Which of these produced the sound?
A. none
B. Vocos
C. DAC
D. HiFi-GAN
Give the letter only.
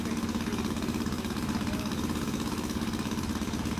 C